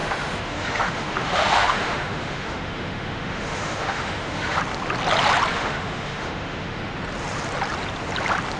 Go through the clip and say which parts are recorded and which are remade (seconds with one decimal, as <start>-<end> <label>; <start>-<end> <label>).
0.0-4.6 remade; 4.6-5.5 recorded; 5.5-6.9 remade; 6.9-8.6 recorded